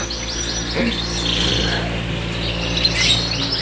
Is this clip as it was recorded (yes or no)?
yes